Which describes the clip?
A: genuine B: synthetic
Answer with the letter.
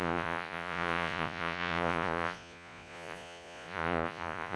B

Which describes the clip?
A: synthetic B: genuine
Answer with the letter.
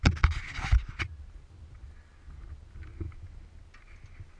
B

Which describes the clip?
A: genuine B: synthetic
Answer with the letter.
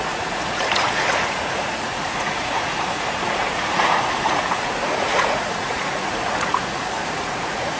B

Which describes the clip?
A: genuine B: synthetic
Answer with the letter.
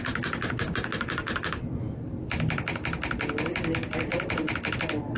A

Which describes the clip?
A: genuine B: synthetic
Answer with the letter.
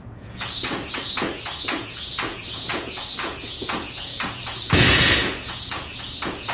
B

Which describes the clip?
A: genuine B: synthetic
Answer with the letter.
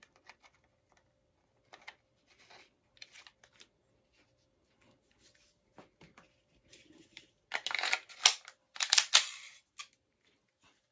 A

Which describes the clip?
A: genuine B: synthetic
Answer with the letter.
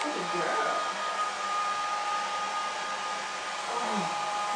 A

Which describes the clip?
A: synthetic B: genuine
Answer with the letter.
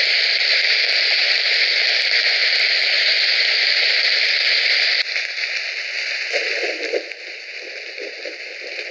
B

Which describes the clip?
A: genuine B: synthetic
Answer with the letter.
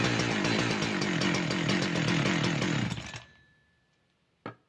A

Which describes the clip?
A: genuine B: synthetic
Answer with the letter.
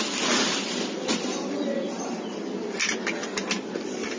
A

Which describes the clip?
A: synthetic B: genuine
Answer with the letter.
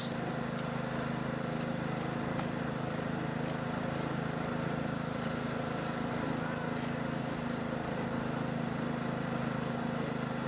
B